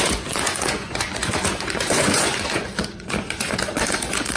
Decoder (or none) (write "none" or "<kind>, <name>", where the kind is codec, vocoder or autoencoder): vocoder, Vocos